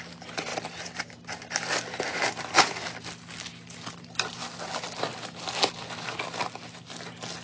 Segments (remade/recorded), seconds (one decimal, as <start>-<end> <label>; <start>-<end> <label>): 0.0-7.4 recorded